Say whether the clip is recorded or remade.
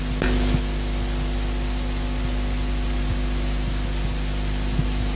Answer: recorded